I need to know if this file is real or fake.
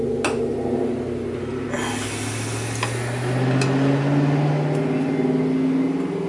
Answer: real